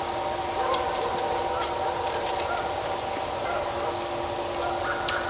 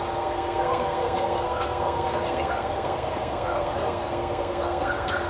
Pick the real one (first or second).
first